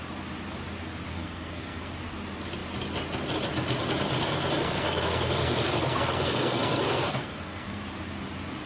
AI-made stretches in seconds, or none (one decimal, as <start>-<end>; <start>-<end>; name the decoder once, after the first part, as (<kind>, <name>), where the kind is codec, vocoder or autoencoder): 1.1-1.9 (codec, SNAC); 4.6-7.8